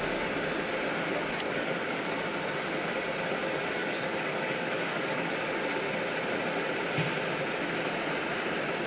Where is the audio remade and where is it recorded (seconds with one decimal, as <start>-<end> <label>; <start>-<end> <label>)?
0.0-0.9 recorded; 0.9-2.1 remade; 2.1-3.8 recorded; 3.8-5.3 remade; 5.3-8.9 recorded